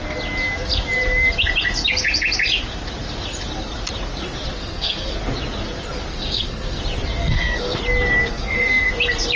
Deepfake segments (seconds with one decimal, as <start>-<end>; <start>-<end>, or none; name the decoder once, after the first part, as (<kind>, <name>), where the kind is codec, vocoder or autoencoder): 4.6-5.1 (codec, SNAC); 6.1-6.8; 7.2-7.8; 8.3-8.9